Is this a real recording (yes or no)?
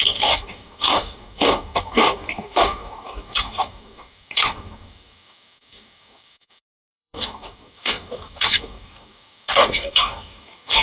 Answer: no